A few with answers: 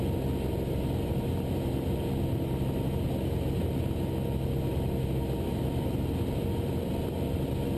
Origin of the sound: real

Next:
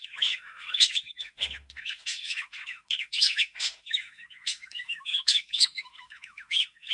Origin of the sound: fake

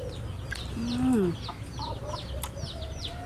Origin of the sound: real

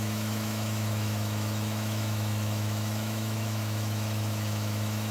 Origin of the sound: fake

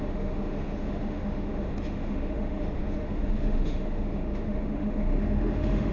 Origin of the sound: fake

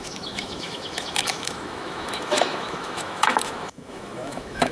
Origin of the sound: fake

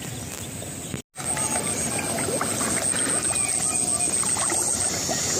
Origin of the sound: real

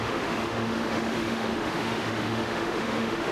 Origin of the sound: fake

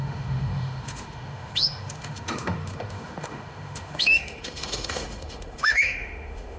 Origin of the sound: fake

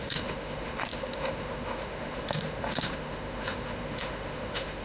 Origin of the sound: fake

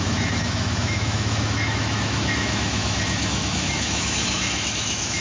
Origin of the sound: fake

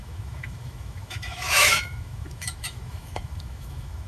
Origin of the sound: fake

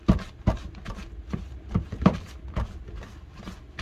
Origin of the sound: real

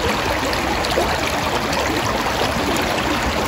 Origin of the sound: real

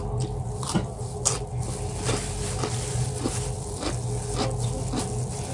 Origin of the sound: real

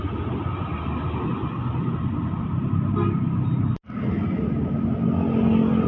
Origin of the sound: real